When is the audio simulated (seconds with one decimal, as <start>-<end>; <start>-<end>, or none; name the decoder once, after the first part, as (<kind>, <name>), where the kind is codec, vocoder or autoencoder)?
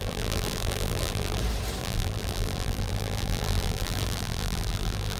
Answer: 0.0-1.4 (vocoder, BigVGAN v2); 1.8-5.2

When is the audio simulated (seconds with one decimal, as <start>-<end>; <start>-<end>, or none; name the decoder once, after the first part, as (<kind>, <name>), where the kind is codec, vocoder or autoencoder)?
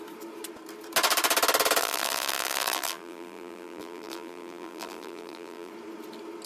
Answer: 1.8-5.7 (vocoder, BigVGAN v2)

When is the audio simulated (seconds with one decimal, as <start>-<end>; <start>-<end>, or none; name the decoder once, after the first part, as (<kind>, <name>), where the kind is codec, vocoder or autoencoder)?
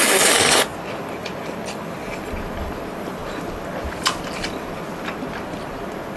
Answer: none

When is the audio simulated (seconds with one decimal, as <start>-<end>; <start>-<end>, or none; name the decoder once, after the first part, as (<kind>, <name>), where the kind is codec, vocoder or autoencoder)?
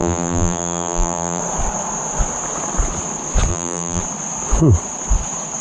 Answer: 0.0-1.4 (vocoder, BigVGAN v2); 3.5-4.0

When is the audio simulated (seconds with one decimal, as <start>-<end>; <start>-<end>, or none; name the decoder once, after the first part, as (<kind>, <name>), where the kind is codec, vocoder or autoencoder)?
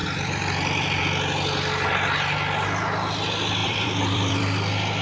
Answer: 0.0-1.0 (vocoder, BigVGAN v2); 3.6-4.4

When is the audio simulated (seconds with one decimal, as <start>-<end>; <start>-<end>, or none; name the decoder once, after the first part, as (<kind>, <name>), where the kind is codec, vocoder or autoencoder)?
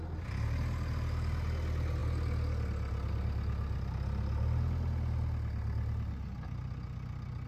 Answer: none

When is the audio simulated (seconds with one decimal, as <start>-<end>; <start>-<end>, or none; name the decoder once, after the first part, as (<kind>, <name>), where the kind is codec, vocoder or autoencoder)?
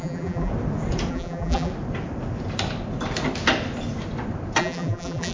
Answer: 0.0-0.5 (vocoder, BigVGAN v2); 1.1-1.7; 4.6-5.3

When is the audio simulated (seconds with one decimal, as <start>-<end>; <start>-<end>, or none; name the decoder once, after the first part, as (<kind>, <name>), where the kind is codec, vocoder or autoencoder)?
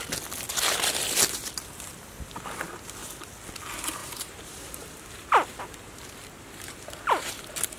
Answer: 4.0-7.3 (vocoder, BigVGAN v2)